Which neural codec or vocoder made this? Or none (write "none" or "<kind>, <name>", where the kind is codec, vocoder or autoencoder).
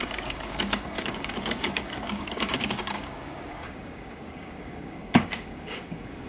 codec, DAC